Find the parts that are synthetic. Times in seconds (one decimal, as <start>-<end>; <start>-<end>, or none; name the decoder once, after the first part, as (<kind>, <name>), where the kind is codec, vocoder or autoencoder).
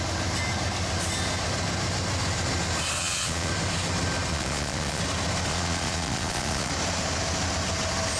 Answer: 3.0-3.5 (vocoder, Vocos); 4.3-5.0; 5.5-6.7